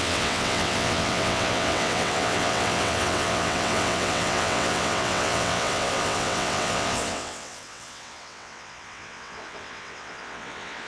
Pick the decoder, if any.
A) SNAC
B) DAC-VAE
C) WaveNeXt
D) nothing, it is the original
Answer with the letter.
C